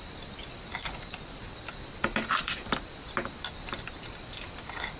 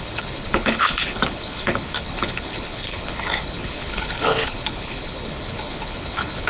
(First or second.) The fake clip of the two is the second